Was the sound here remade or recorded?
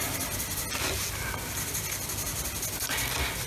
recorded